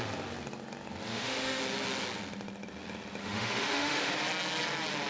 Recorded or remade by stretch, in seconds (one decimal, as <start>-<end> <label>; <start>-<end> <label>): 0.0-1.1 recorded; 1.1-1.6 remade; 1.6-3.2 recorded; 3.2-4.1 remade; 4.1-5.1 recorded